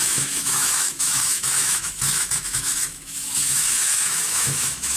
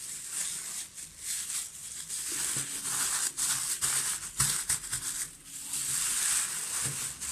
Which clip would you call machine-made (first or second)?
first